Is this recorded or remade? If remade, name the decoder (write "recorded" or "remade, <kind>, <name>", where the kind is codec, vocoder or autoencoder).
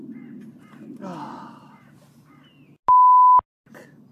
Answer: recorded